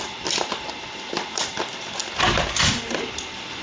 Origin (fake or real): fake